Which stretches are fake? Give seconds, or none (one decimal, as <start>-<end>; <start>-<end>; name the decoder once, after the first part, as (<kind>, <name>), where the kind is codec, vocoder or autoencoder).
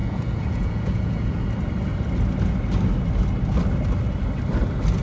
0.0-1.5 (vocoder, Vocos)